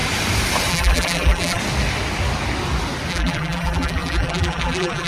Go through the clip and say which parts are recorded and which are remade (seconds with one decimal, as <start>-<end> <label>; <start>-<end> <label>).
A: 0.0-0.7 recorded; 0.7-1.6 remade; 1.6-3.1 recorded; 3.1-5.1 remade